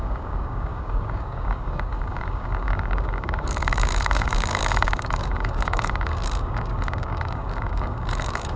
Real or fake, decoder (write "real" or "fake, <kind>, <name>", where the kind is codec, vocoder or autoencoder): fake, codec, DAC